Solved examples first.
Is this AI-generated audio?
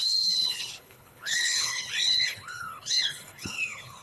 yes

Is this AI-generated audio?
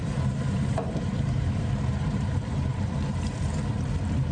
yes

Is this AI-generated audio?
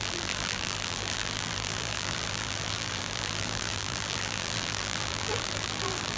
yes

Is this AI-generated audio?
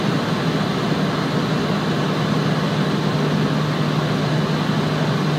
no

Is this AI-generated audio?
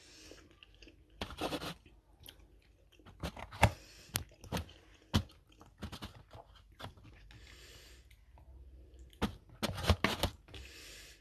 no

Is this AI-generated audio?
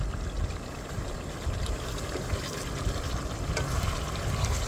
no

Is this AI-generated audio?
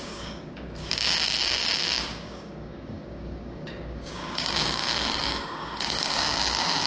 yes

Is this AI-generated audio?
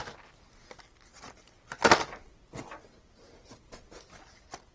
no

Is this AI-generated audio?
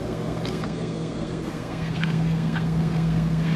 yes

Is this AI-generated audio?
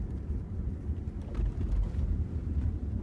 no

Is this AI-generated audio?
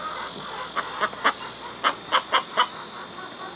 no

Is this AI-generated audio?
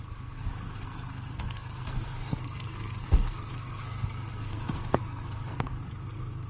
yes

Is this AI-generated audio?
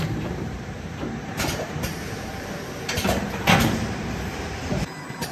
yes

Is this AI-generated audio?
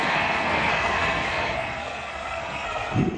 yes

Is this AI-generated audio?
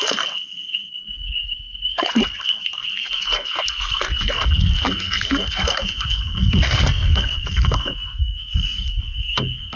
yes